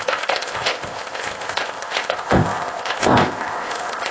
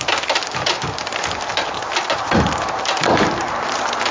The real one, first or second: second